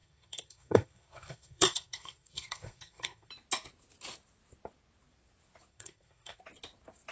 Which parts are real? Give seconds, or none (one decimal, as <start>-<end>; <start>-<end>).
3.3-5.7; 6.4-7.1